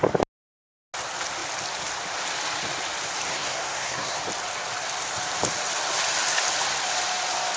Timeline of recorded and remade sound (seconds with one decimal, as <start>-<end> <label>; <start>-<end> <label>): 0.0-3.3 recorded; 3.3-4.2 remade; 4.2-7.6 recorded